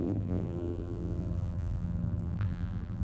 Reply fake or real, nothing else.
fake